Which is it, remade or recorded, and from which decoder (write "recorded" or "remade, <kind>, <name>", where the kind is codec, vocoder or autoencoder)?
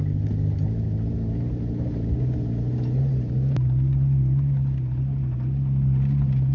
recorded